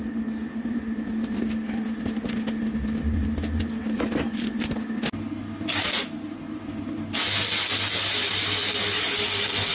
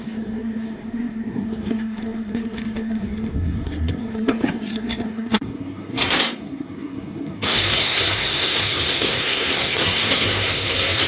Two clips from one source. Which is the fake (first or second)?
second